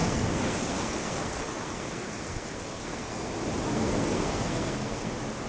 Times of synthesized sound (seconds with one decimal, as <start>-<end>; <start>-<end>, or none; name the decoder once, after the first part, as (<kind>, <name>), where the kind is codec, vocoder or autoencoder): 0.0-3.3 (codec, SNAC); 3.7-5.1